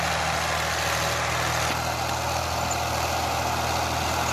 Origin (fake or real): real